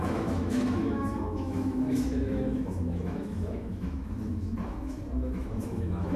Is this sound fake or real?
fake